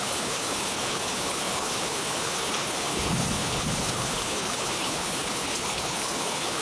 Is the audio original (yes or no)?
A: no